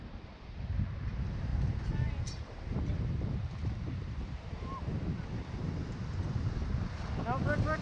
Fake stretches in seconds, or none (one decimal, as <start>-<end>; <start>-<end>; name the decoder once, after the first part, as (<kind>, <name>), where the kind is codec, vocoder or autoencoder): 1.5-5.7 (vocoder, BigVGAN v2)